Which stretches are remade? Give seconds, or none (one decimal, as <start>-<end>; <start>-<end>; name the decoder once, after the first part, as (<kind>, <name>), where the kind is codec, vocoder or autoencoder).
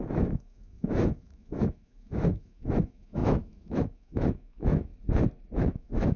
0.0-4.9 (autoencoder, DAC-VAE); 5.6-6.2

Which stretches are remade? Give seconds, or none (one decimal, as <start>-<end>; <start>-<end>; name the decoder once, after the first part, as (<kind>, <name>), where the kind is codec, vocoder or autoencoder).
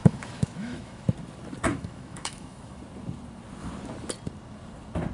0.0-1.0 (autoencoder, DAC-VAE); 1.7-2.8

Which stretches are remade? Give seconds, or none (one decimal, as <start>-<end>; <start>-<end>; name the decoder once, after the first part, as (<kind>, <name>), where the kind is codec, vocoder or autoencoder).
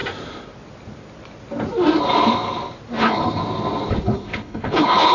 3.0-3.4 (codec, HILCodec); 3.9-5.1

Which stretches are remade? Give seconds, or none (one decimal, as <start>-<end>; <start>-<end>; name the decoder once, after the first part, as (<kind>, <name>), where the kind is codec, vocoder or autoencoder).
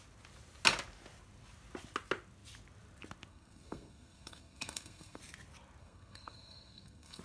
3.3-5.2 (codec, SNAC); 5.8-7.2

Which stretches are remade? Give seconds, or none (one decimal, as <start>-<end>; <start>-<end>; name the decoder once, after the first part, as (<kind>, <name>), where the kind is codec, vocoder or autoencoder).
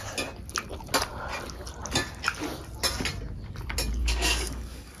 4.0-5.0 (codec, DAC)